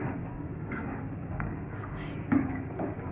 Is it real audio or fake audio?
fake